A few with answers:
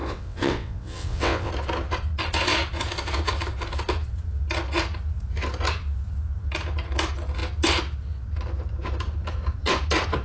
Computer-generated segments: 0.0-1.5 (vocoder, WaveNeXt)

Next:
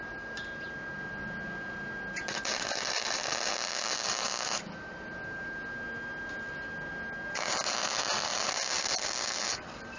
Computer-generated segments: none

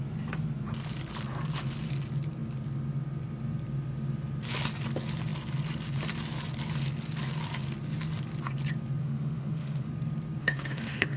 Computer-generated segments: 9.0-9.9 (autoencoder, DAC-VAE); 10.4-11.2